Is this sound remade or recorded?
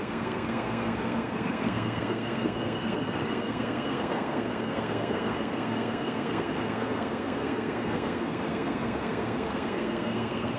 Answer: remade